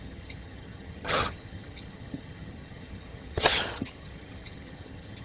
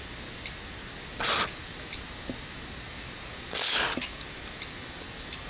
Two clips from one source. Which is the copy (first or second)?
first